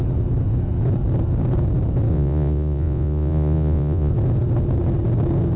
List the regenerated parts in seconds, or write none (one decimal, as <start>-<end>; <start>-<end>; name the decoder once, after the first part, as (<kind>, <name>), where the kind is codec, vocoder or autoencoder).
2.1-4.1 (vocoder, Vocos)